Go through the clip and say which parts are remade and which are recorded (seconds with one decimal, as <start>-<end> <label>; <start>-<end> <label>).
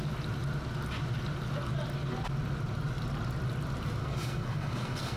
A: 0.0-4.0 recorded; 4.0-5.2 remade